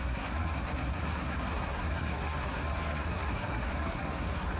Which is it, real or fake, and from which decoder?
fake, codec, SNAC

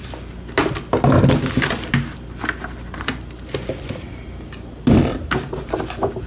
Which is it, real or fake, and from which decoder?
real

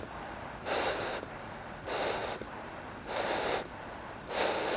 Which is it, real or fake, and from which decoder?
real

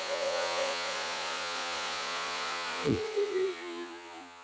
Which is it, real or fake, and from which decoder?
fake, vocoder, Vocos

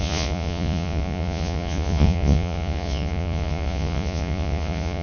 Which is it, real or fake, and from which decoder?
fake, vocoder, Vocos